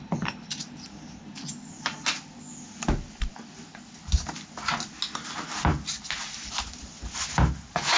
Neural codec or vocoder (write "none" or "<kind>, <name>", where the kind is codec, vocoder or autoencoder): none